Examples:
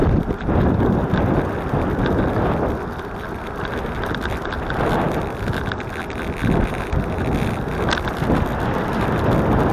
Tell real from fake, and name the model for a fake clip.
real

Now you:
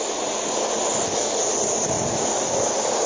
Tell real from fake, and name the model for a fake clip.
real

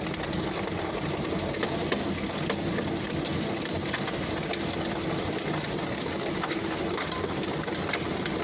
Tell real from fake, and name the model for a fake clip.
real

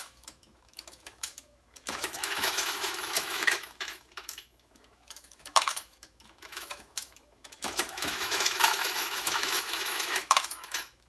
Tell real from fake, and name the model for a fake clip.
fake, autoencoder, DAC-VAE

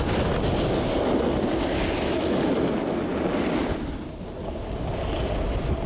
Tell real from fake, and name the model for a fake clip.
real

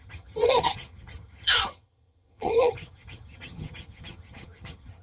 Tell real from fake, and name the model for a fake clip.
fake, vocoder, HiFi-GAN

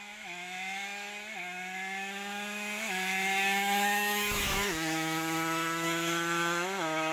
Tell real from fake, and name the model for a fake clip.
fake, autoencoder, DAC-VAE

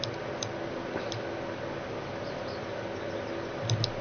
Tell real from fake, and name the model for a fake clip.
real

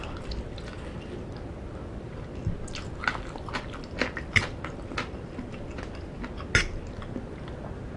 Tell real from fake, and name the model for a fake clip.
real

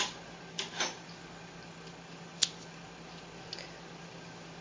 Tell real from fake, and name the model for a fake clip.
real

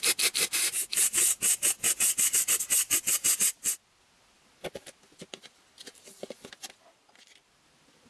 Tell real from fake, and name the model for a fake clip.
real